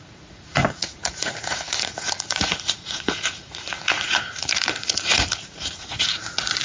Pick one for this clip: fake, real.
fake